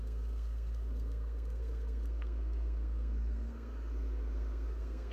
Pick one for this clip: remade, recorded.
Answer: remade